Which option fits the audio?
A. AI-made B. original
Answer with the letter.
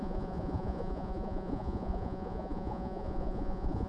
A